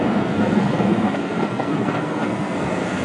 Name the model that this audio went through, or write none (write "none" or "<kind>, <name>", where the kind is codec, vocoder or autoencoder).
codec, SNAC